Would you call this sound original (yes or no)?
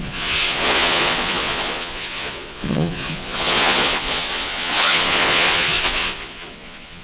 no